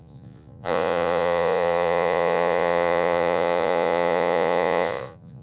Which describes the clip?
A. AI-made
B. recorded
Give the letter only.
A